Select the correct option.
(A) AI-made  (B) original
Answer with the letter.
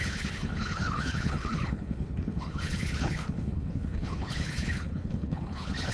A